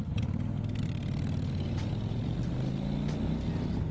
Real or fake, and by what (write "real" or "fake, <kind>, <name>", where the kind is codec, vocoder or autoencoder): real